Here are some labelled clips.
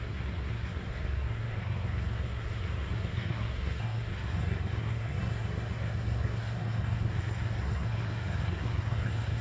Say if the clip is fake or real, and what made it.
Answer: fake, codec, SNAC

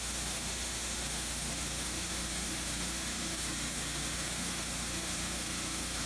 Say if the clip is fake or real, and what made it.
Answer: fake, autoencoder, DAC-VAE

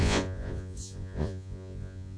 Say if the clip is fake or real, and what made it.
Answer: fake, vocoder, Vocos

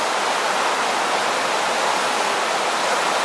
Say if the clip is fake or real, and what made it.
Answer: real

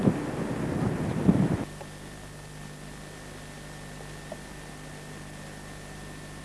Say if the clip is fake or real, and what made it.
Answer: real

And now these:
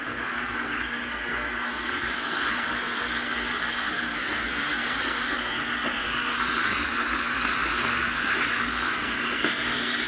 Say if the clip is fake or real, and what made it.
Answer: fake, codec, SNAC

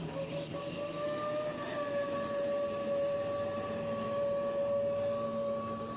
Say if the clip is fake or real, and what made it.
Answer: real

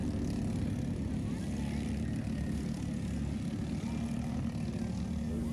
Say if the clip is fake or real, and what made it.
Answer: real